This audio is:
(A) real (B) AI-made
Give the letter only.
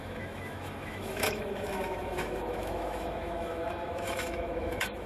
B